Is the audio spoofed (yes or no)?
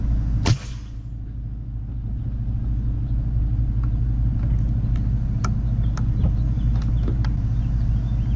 no